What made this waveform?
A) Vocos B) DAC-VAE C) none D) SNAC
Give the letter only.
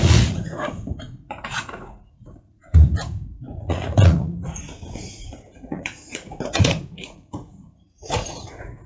A